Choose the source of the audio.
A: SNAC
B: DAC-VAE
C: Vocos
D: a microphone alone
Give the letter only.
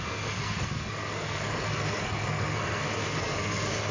A